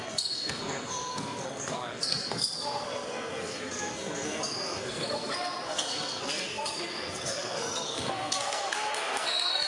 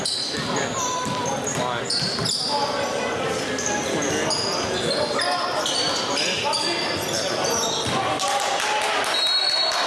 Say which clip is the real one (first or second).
second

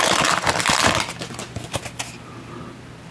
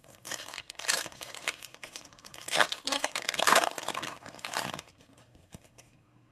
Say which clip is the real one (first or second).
first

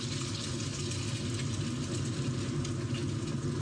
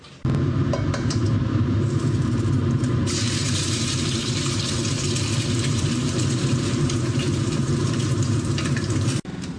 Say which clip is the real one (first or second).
first